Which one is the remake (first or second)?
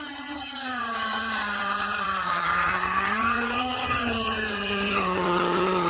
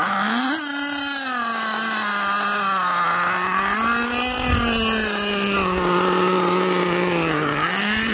first